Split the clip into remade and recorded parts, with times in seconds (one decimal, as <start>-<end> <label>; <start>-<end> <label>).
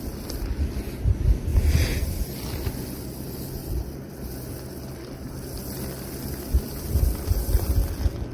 0.0-8.3 recorded